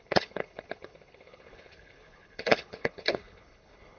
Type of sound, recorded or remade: remade